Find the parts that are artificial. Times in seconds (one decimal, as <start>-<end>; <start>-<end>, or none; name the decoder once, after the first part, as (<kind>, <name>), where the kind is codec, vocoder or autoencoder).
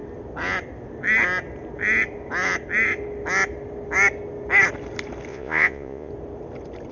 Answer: 5.3-6.1 (vocoder, Vocos)